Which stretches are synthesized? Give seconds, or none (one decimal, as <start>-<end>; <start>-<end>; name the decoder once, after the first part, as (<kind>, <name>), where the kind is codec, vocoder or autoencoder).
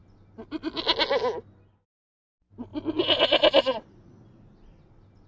none